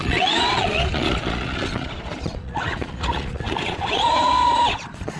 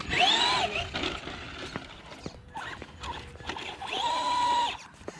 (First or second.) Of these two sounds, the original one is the second